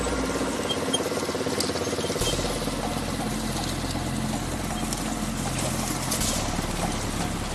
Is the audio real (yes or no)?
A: yes